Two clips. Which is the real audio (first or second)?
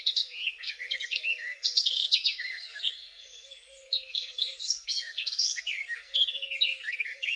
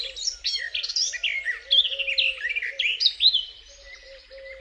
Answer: second